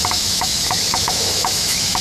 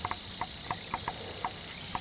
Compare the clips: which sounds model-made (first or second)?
first